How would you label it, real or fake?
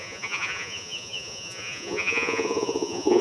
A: fake